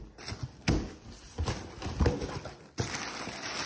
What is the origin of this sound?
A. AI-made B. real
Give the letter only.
B